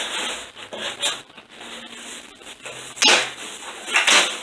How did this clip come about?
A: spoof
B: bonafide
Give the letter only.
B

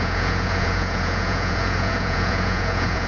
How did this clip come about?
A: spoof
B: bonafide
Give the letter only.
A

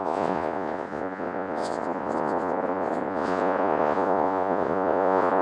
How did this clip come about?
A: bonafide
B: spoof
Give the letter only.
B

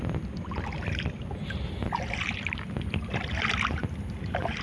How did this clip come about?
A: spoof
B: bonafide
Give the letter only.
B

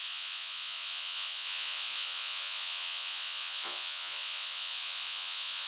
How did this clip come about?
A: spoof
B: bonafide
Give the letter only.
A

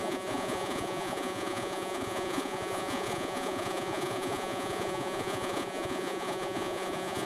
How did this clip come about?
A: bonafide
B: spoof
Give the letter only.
B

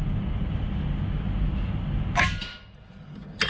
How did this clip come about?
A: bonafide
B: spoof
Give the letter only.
A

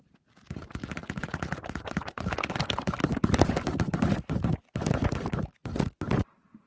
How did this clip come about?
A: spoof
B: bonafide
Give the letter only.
B